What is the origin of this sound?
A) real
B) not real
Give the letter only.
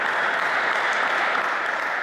A